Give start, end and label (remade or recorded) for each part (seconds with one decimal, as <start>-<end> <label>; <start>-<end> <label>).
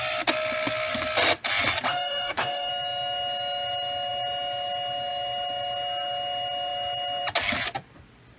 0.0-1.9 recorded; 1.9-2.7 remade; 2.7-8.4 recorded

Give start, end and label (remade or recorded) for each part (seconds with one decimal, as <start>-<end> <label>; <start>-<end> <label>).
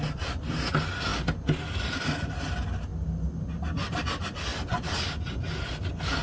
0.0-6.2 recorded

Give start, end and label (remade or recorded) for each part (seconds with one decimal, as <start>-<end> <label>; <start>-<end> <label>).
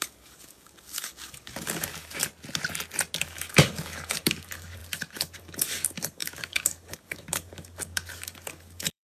0.0-2.2 remade; 2.2-3.2 recorded; 3.2-9.0 remade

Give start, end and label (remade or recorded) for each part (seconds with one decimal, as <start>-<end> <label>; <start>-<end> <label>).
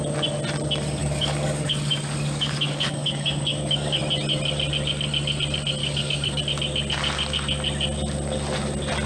0.0-1.0 recorded; 1.0-4.0 remade; 4.0-5.8 recorded; 5.8-6.4 remade; 6.4-9.1 recorded